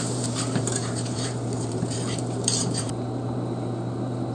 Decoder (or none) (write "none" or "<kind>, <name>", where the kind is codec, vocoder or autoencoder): vocoder, BigVGAN v2